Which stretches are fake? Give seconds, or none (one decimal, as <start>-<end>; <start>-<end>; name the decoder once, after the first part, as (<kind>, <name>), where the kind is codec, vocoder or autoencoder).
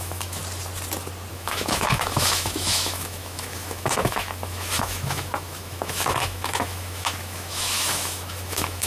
0.0-0.4 (autoencoder, DAC-VAE); 1.3-8.9